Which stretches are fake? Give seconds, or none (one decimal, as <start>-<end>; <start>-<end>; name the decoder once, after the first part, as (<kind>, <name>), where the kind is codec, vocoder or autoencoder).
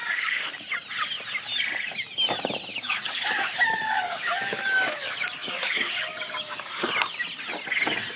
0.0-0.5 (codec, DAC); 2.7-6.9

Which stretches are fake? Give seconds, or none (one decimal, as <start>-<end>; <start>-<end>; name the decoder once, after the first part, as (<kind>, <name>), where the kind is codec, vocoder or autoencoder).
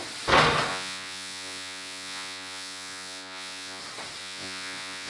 0.7-3.8 (vocoder, Vocos); 4.2-5.1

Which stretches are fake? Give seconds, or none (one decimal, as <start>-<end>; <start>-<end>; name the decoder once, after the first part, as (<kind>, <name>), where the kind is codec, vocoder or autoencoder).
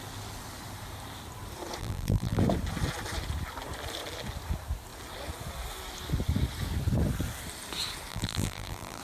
1.8-2.4 (vocoder, BigVGAN v2); 8.1-9.0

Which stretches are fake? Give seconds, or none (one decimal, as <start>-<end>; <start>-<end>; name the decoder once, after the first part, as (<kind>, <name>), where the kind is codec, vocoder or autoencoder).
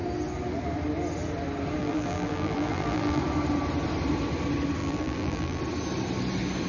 1.8-3.2 (vocoder, BigVGAN v2); 4.8-5.6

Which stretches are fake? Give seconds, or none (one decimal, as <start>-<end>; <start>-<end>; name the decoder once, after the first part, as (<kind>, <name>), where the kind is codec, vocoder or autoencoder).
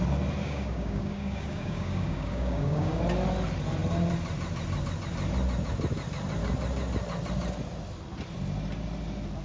0.4-3.0 (codec, DAC)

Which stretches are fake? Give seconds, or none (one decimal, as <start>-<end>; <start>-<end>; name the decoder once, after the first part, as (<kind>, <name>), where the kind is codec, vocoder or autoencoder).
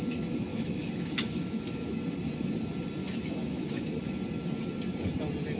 0.5-2.0 (autoencoder, DAC-VAE); 3.0-3.8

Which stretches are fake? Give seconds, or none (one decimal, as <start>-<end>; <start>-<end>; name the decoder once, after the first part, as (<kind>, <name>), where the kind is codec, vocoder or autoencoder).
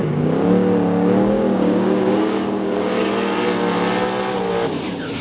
0.0-3.1 (codec, DAC)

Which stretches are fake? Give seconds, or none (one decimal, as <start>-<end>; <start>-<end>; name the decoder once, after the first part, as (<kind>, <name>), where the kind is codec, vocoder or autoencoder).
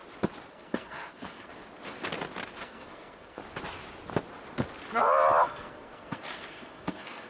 0.5-1.5 (codec, SNAC); 2.6-3.4; 5.4-7.3